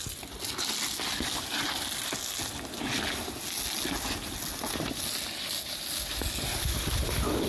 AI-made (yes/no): no